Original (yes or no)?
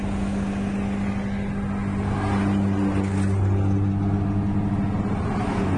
yes